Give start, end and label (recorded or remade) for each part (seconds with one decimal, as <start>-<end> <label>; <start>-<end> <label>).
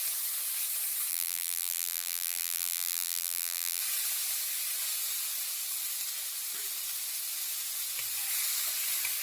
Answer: 0.0-1.1 recorded; 1.1-3.8 remade; 3.8-9.2 recorded